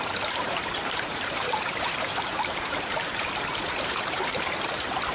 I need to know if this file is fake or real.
fake